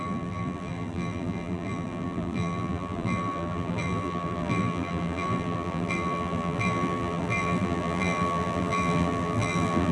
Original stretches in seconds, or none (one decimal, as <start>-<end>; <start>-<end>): none